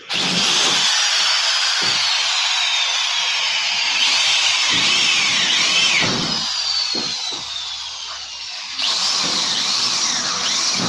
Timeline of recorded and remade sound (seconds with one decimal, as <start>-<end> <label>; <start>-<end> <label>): 0.0-10.9 remade